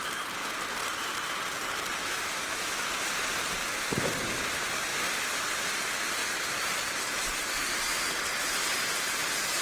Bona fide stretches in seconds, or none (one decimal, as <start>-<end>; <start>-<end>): 0.0-2.0; 3.0-9.6